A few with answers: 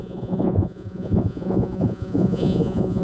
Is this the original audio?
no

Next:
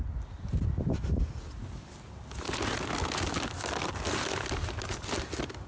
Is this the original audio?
yes